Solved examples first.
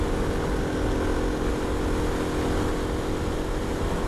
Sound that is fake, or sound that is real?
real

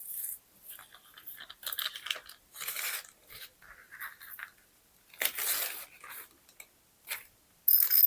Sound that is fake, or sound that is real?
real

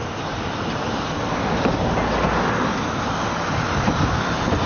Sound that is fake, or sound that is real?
real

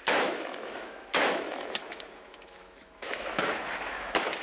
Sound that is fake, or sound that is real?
fake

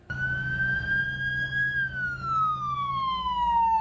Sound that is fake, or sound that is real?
fake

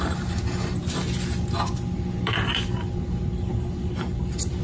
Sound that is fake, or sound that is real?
real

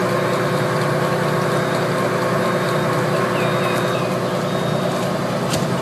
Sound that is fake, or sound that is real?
real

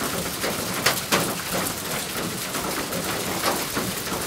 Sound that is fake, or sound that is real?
real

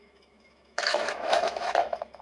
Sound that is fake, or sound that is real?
fake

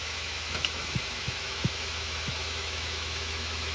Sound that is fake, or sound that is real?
fake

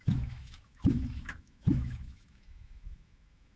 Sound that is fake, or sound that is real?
fake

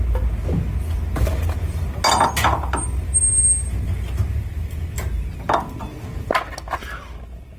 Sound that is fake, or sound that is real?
real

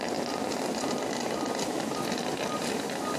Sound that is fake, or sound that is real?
real